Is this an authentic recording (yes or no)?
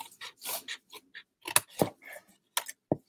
yes